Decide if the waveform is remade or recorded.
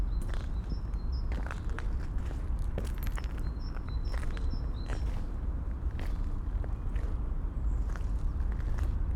recorded